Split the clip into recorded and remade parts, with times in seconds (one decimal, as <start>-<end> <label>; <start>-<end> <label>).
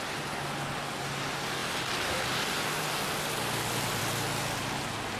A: 0.0-5.2 recorded